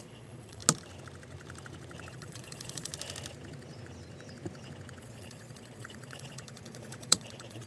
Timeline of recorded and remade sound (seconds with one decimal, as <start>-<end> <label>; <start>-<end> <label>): 0.0-0.6 remade; 0.6-2.1 recorded; 2.1-2.9 remade; 2.9-5.0 recorded; 5.0-7.7 remade